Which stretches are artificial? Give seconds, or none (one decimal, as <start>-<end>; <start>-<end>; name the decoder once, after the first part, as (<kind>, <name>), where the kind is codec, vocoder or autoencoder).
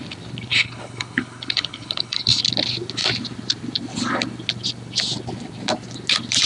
0.5-2.4 (codec, HILCodec)